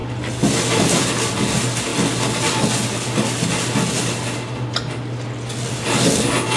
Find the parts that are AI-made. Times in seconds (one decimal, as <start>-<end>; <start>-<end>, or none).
none